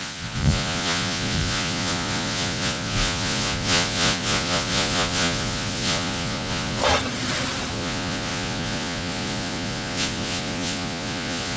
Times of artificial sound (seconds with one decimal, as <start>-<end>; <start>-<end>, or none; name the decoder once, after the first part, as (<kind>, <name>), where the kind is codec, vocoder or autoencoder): 0.0-6.8 (vocoder, Vocos); 7.7-11.6